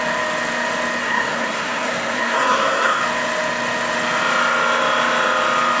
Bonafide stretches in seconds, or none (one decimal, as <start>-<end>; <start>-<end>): 0.0-1.0; 3.0-5.8

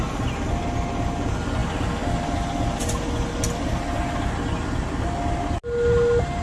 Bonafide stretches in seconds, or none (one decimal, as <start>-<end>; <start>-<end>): 0.0-6.4

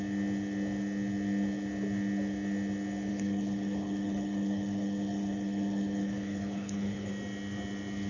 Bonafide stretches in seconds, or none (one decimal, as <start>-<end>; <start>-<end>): 0.0-3.1; 7.1-8.1

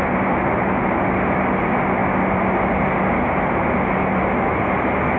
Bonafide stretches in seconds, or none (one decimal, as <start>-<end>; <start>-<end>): 0.0-5.2

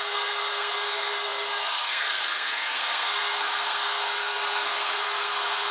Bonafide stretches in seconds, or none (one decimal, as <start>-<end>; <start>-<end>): none

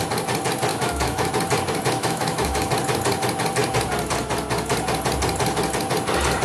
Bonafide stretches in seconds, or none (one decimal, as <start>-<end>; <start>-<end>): 0.0-0.7; 1.3-2.0; 2.7-6.4